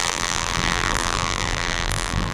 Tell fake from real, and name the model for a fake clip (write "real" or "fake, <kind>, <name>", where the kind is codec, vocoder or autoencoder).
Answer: fake, vocoder, BigVGAN v2